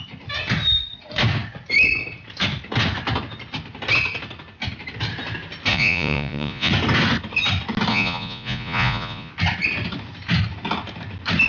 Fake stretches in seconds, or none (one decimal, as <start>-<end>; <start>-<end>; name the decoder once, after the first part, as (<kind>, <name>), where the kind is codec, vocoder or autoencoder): 5.7-6.7 (vocoder, Vocos); 7.9-9.3